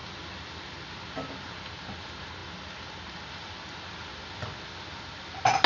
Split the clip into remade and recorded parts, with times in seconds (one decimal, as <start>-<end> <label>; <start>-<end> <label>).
0.0-5.7 recorded